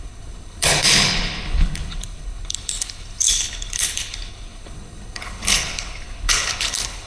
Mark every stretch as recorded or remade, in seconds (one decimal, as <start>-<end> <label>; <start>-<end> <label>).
0.0-7.1 remade